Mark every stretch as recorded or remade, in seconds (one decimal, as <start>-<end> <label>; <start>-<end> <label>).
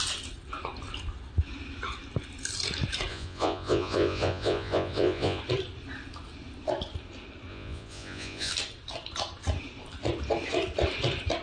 0.0-3.1 recorded; 3.1-5.4 remade; 5.4-7.5 recorded; 7.5-8.5 remade; 8.5-11.4 recorded